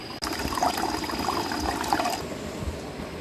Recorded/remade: recorded